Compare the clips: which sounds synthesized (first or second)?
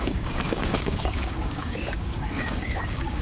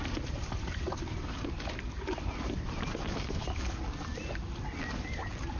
first